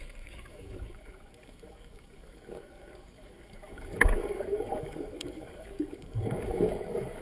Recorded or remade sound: remade